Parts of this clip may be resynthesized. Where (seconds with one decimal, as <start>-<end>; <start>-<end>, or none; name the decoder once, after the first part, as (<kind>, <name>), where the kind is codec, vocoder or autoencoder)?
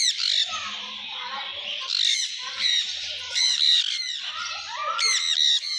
0.0-4.8 (vocoder, BigVGAN v2)